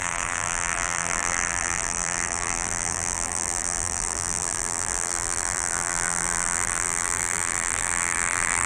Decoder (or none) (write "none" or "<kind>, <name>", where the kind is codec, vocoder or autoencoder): vocoder, BigVGAN v2